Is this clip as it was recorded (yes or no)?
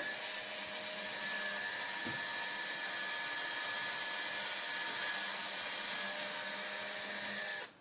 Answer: yes